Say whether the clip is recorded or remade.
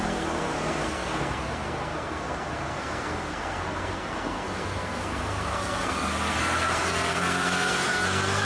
remade